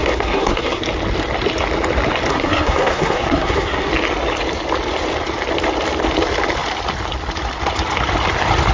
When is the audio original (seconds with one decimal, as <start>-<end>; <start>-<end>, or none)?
0.8-2.3; 3.9-8.7